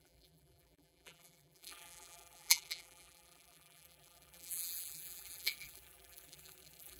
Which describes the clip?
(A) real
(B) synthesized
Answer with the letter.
B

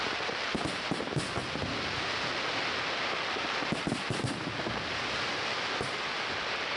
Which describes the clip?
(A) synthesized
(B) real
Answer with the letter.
B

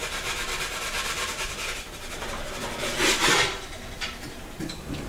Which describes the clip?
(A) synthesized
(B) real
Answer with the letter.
A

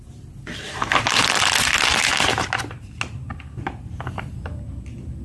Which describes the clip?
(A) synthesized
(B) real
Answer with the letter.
B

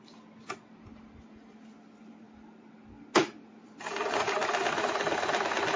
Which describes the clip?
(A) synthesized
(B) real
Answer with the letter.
B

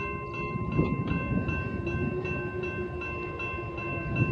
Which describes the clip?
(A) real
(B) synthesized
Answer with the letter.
A